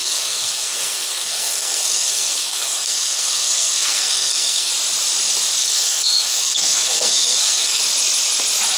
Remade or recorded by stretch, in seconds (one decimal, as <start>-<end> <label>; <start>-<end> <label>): 0.0-4.7 remade; 4.7-5.6 recorded; 5.6-7.8 remade; 7.8-8.8 recorded